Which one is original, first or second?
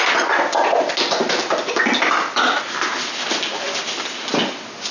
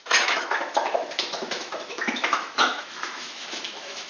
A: first